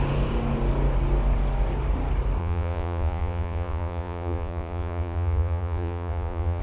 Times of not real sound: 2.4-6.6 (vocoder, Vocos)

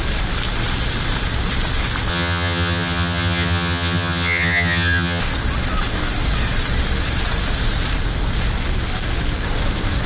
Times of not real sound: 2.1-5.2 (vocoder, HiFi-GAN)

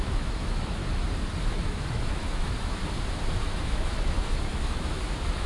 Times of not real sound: 0.0-0.8 (autoencoder, DAC-VAE); 1.4-2.8; 3.4-5.5